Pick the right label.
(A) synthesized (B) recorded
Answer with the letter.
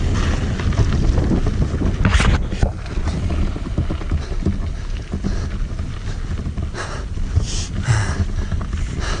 B